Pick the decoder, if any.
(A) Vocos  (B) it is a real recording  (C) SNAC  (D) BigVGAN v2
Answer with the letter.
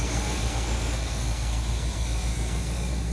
C